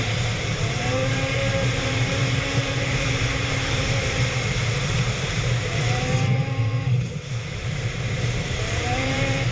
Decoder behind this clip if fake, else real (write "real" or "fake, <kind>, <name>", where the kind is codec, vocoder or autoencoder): fake, vocoder, BigVGAN v2